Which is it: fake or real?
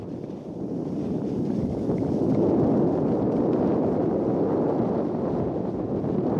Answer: real